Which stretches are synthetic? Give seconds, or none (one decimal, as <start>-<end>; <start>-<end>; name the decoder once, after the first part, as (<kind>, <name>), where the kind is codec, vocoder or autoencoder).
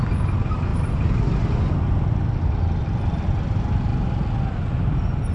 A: none